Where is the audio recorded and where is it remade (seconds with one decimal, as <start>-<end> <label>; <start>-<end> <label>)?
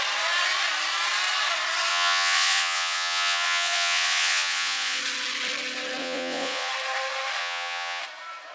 0.0-1.9 recorded; 1.9-5.0 remade; 5.0-6.0 recorded; 6.0-6.7 remade; 6.7-7.4 recorded; 7.4-8.0 remade; 8.0-8.5 recorded